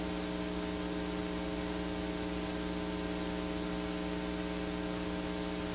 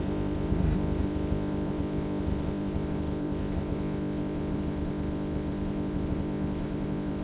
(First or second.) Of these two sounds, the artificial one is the second